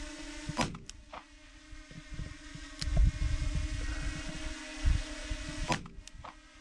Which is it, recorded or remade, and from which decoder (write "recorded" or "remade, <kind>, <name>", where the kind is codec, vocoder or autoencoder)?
recorded